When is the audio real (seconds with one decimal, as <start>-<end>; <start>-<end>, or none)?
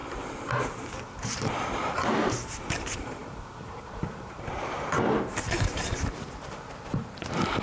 none